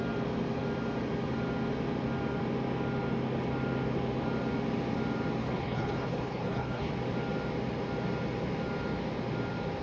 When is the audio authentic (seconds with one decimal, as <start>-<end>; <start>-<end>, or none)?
0.0-5.4; 6.9-9.8